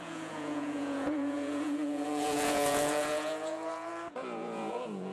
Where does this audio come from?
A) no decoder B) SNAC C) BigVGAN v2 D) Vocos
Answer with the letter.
D